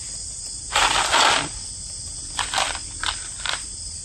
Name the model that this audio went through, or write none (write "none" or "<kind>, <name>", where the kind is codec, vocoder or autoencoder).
vocoder, BigVGAN v2